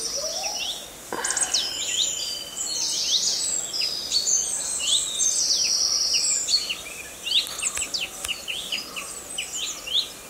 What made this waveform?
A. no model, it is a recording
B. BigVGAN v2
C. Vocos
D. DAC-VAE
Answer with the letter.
A